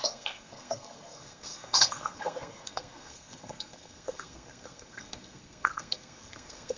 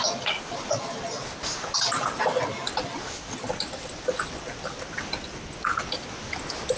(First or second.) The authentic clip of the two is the second